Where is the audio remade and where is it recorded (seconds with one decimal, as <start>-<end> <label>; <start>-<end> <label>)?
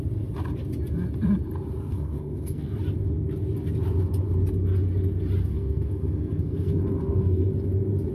0.0-1.9 recorded; 1.9-2.6 remade; 2.6-5.5 recorded; 5.5-7.5 remade; 7.5-8.1 recorded